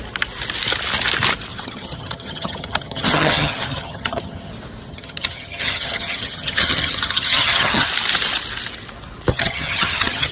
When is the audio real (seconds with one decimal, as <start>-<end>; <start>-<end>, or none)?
0.0-1.5; 4.5-4.9; 7.9-9.3